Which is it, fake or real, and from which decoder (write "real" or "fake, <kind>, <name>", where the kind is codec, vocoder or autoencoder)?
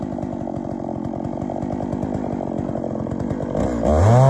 real